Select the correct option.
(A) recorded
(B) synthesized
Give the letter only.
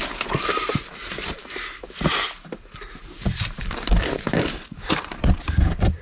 B